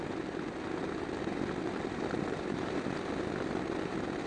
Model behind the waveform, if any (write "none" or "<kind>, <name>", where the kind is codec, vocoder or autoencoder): vocoder, BigVGAN v2